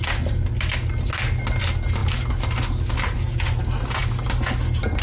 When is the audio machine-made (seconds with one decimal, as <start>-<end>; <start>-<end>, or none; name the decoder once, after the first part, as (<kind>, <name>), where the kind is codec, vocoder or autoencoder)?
none